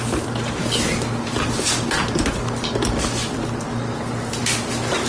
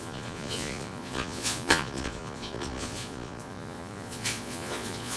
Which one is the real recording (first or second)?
first